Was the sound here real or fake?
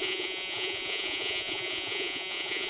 fake